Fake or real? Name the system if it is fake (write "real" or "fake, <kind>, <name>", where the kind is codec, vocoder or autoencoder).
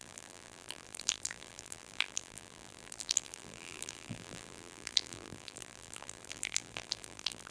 fake, vocoder, BigVGAN v2